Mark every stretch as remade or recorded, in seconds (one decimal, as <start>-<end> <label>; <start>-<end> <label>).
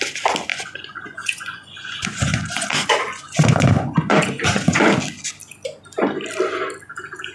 0.0-0.5 recorded; 0.5-4.9 remade; 4.9-7.3 recorded